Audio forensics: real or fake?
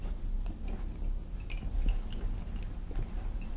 real